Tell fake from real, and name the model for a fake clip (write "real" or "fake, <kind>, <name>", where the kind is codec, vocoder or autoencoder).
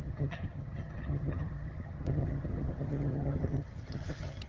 fake, vocoder, HiFi-GAN